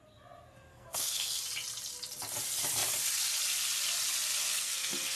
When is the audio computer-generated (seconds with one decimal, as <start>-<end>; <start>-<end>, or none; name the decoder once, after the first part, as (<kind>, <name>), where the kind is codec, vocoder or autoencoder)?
0.7-1.4 (codec, SNAC); 4.4-5.2